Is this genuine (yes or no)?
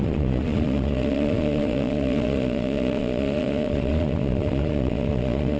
no